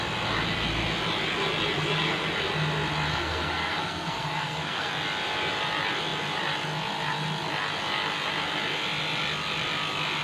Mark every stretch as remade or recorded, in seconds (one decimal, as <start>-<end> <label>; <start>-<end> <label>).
0.0-3.1 recorded; 3.1-4.9 remade; 4.9-10.2 recorded